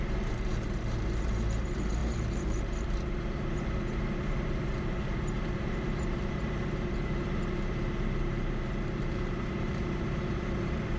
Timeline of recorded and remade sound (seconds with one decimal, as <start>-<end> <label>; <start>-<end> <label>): 0.0-11.0 remade